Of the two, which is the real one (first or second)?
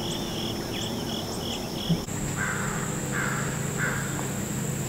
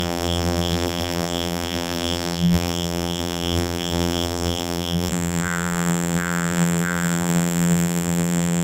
first